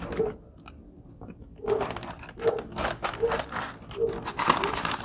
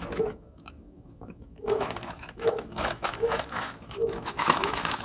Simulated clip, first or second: second